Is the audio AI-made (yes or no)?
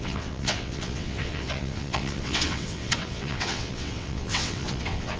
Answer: yes